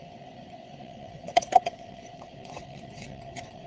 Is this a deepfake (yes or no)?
yes